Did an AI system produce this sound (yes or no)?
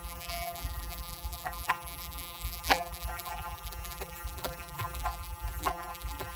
yes